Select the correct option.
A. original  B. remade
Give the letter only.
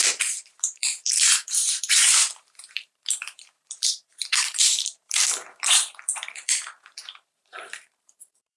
B